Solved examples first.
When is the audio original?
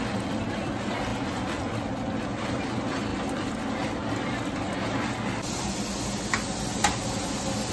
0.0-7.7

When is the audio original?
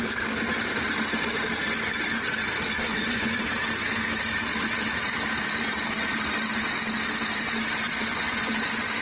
0.0-2.9; 3.4-9.0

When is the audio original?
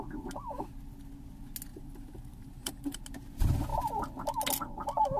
0.0-1.7; 3.0-5.2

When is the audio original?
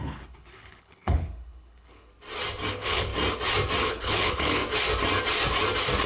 2.1-2.7; 3.1-3.8; 4.6-6.1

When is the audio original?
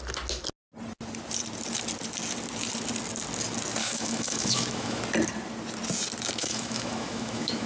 0.0-3.8; 5.0-6.4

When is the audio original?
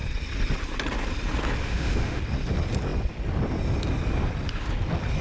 0.0-1.6; 2.2-5.2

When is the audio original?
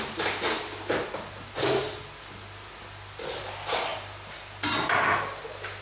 0.0-5.8